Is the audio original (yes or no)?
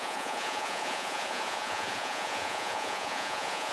no